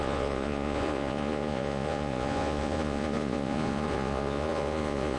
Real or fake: fake